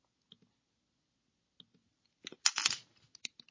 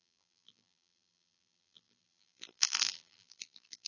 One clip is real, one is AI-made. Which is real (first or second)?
first